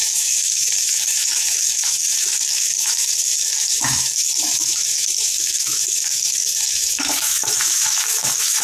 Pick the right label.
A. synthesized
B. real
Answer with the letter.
A